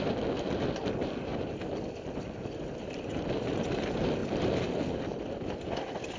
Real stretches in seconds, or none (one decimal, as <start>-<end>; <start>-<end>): 0.0-1.3; 2.7-6.2